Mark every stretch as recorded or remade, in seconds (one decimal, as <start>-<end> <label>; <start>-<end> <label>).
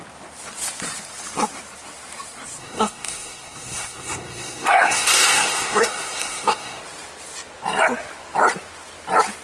0.0-2.6 recorded; 2.6-6.8 remade; 6.8-9.4 recorded